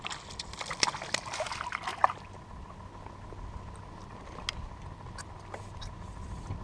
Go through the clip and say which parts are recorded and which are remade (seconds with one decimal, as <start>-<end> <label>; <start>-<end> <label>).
0.0-6.6 recorded